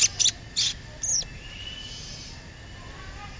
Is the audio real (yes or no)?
yes